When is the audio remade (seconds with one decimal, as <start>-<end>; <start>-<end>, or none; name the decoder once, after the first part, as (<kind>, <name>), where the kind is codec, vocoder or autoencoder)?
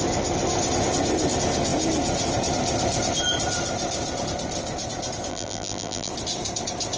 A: 5.3-6.1 (vocoder, BigVGAN v2)